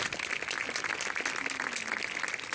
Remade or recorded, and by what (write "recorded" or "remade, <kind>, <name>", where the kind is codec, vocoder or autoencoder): recorded